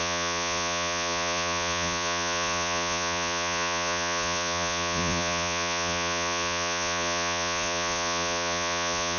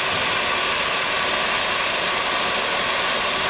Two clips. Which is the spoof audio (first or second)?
first